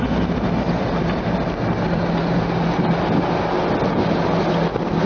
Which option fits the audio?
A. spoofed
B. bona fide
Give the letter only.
B